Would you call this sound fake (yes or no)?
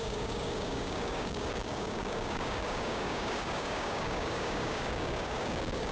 yes